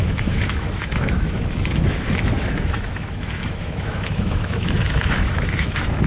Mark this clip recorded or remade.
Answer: remade